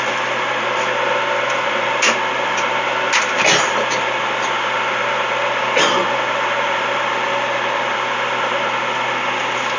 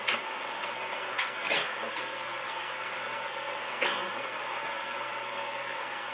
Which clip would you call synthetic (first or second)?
second